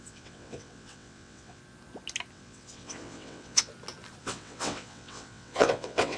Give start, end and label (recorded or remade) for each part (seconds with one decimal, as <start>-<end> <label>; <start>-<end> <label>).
0.0-1.6 remade; 1.6-2.3 recorded; 2.3-3.7 remade; 3.7-4.2 recorded; 4.2-6.2 remade